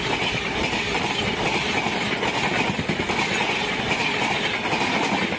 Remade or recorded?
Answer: recorded